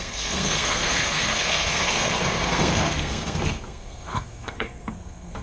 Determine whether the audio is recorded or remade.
remade